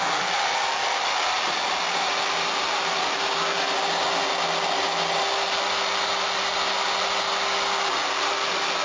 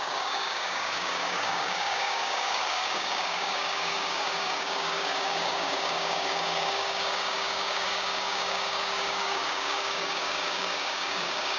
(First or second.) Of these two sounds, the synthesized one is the second